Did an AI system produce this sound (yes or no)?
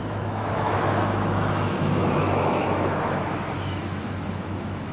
yes